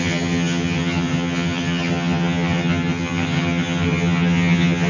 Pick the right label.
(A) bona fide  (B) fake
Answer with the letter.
B